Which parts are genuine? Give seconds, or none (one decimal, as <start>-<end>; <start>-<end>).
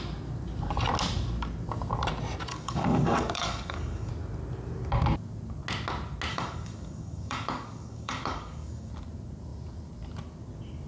0.0-2.5; 4.1-6.3; 8.9-10.9